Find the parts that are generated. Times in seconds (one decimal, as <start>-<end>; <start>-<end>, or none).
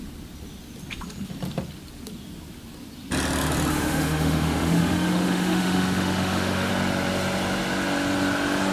3.7-6.7